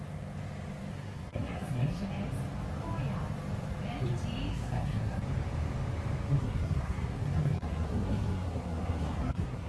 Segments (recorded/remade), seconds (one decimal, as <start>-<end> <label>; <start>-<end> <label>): 0.0-0.9 recorded; 0.9-2.1 remade; 2.1-4.5 recorded; 4.5-5.2 remade; 5.2-6.4 recorded; 6.4-9.7 remade

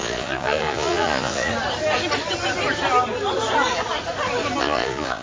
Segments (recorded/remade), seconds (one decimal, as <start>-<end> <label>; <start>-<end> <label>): 0.0-1.5 remade; 1.5-4.6 recorded; 4.6-5.2 remade

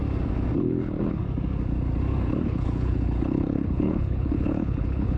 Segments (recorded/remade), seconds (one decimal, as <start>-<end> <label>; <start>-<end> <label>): 0.0-0.6 recorded; 0.6-1.2 remade; 1.2-2.3 recorded; 2.3-5.2 remade

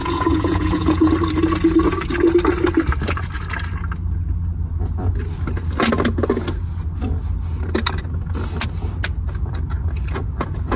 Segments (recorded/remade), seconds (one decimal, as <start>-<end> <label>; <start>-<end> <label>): 0.0-1.1 remade; 1.1-10.8 recorded

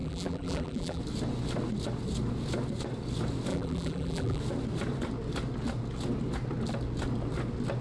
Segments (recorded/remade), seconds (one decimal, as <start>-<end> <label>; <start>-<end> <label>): 0.0-1.0 remade; 1.0-3.5 recorded; 3.5-4.4 remade; 4.4-7.8 recorded

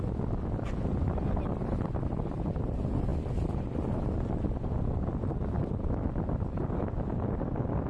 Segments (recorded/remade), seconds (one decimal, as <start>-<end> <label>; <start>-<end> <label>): 0.0-7.9 recorded